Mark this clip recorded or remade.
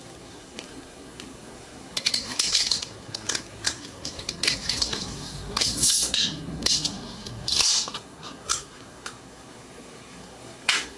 remade